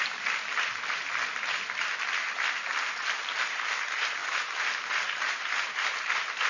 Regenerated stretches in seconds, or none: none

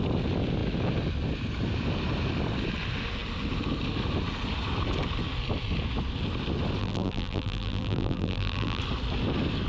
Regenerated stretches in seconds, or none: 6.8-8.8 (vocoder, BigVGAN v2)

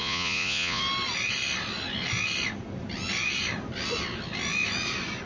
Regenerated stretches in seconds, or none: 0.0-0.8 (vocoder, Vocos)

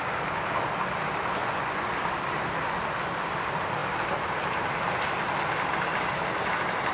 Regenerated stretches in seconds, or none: 1.4-1.9 (vocoder, Vocos)

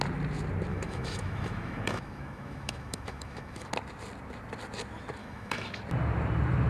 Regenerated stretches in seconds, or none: 0.7-3.7 (autoencoder, DAC-VAE); 5.2-5.8